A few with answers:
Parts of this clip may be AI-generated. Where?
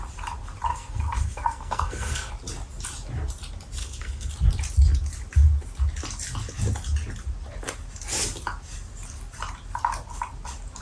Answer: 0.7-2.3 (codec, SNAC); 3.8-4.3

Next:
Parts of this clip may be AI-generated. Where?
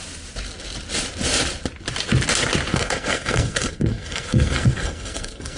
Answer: 2.7-5.6 (codec, SNAC)